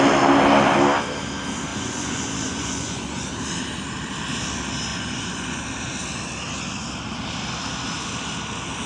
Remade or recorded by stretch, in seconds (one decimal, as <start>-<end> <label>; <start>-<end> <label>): 0.0-1.7 recorded; 1.7-3.3 remade; 3.3-4.9 recorded; 4.9-5.6 remade; 5.6-8.9 recorded